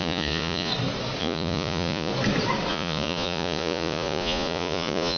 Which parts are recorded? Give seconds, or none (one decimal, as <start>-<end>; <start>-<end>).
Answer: 0.7-1.2; 2.1-2.7